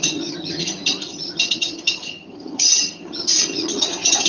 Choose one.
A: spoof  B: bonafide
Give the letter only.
A